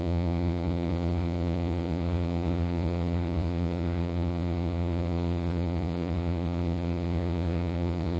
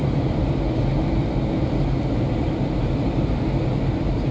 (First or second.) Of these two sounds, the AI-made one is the first